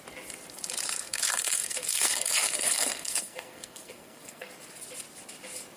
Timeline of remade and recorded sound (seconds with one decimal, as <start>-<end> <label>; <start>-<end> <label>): 0.0-1.0 recorded; 1.0-4.5 remade; 4.5-5.8 recorded